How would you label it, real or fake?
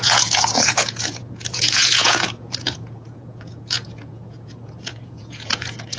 fake